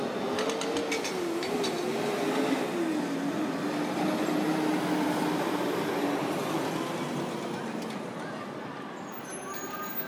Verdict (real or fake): real